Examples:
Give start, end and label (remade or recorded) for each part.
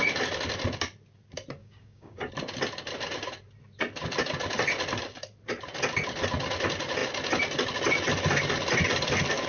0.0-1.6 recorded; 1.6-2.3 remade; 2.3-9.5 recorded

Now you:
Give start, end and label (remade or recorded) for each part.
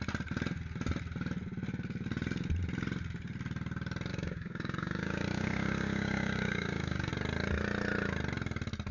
0.0-4.1 recorded; 4.1-7.1 remade; 7.1-8.9 recorded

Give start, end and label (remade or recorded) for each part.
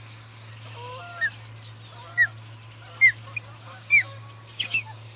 0.0-0.5 remade; 0.5-3.6 recorded; 3.6-5.2 remade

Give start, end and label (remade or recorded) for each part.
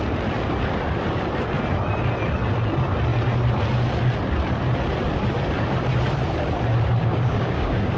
0.0-7.0 recorded; 7.0-8.0 remade